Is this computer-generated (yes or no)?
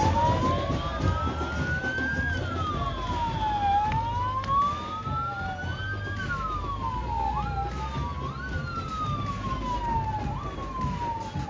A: no